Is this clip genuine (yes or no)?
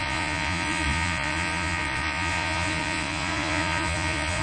no